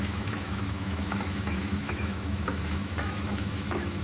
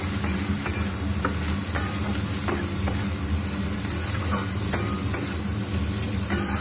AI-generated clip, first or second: first